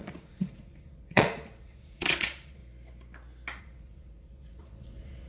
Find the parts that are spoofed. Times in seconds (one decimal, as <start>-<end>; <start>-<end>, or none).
0.0-2.6; 3.6-5.3